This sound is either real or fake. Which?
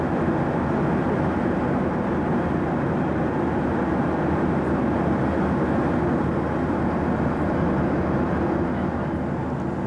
real